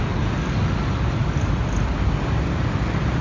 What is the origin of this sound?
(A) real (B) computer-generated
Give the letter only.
A